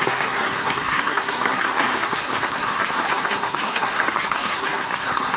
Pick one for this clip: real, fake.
fake